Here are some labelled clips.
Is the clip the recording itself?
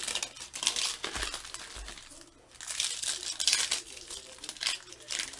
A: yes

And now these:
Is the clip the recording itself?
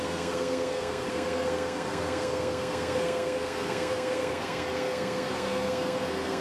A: no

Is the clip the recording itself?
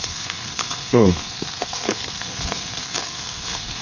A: no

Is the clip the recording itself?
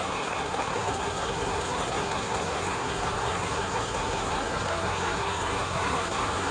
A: no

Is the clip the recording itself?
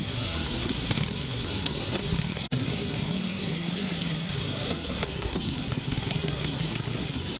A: no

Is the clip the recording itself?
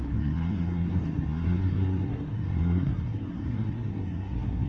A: no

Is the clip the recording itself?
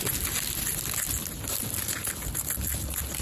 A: yes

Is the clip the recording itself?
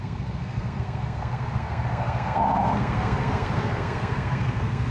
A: no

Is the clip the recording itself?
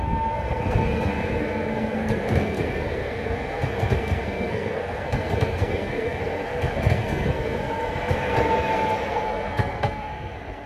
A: no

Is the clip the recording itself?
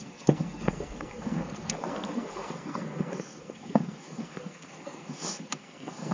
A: no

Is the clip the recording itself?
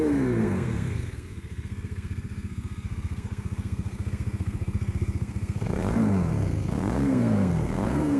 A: no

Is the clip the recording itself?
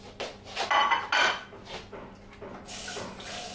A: yes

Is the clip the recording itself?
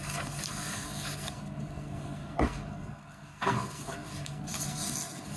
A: no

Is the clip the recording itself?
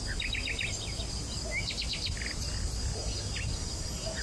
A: yes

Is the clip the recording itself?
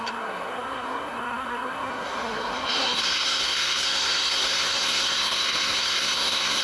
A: no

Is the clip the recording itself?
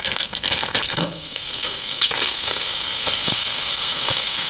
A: no